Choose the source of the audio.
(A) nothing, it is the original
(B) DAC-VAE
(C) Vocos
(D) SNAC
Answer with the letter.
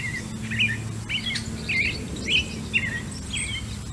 A